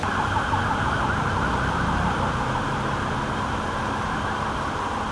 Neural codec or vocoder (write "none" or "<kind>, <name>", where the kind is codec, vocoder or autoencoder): none